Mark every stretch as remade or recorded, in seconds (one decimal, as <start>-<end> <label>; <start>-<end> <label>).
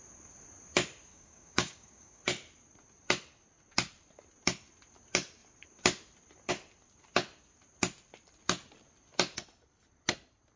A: 0.0-1.1 recorded; 1.1-2.2 remade; 2.2-10.6 recorded